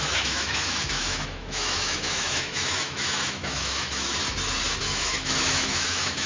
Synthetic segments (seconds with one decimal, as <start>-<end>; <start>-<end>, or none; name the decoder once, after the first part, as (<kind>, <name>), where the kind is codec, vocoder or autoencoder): 0.0-4.2 (autoencoder, DAC-VAE); 4.8-6.3